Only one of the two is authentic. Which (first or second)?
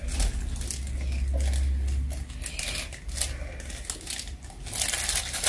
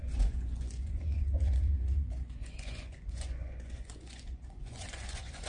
first